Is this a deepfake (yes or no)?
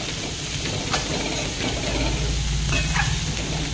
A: no